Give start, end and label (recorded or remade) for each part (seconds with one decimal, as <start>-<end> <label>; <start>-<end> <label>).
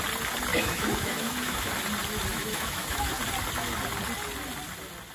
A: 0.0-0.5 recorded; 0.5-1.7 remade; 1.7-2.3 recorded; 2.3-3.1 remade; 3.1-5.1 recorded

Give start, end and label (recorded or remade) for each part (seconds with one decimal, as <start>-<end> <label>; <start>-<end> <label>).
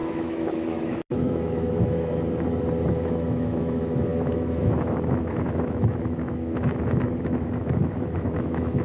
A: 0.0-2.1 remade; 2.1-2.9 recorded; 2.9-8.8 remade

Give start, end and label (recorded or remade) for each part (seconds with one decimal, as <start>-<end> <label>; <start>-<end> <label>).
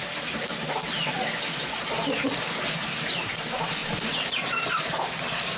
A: 0.0-5.6 recorded